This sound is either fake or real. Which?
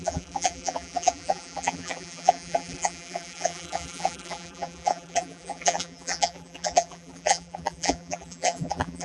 fake